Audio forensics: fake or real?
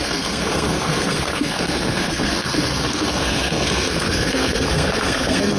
fake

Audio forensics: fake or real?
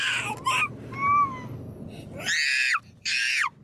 real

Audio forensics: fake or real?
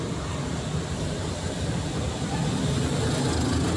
real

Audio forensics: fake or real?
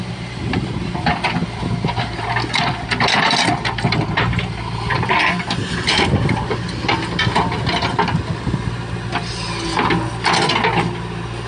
real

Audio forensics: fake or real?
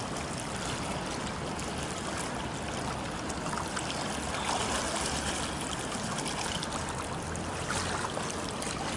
real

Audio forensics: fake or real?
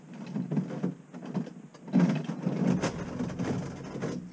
real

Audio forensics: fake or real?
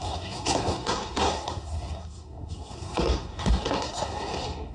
fake